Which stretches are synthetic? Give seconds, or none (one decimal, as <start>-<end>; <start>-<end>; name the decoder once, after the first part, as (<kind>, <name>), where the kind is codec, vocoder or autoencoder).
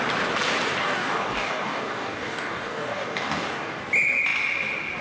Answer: 0.8-3.8 (codec, DAC)